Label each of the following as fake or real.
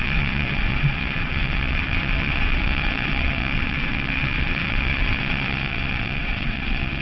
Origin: fake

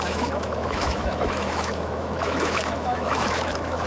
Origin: fake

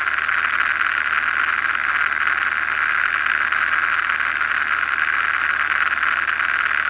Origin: real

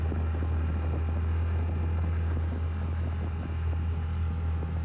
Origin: real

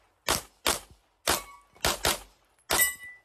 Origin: real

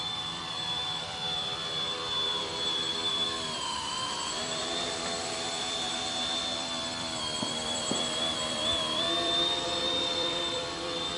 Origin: fake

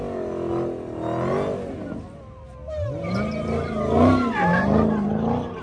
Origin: real